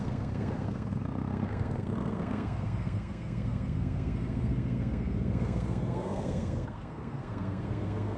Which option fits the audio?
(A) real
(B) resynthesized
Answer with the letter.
B